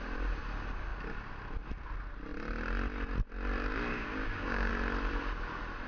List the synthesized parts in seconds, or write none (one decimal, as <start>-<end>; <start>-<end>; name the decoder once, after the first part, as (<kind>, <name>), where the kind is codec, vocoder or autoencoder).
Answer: 3.9-4.7 (codec, DAC)